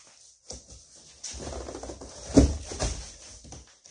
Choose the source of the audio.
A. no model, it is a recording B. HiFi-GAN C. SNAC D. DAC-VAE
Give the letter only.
A